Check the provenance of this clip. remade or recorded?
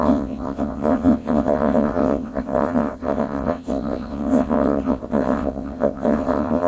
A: remade